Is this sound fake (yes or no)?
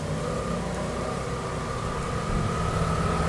no